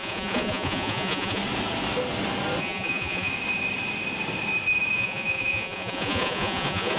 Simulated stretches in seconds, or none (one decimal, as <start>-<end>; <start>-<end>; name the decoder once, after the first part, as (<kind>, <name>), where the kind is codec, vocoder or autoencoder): 0.0-1.4 (vocoder, Vocos); 2.6-3.3; 4.9-7.0